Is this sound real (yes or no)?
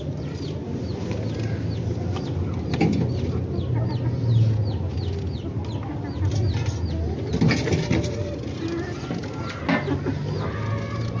yes